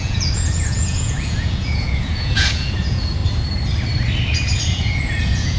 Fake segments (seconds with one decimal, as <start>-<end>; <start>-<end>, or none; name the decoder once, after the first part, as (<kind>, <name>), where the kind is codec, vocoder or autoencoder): 0.0-3.2 (vocoder, Vocos); 4.8-5.6